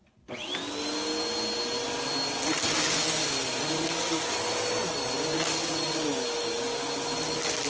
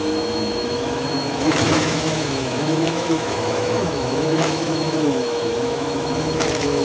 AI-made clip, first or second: second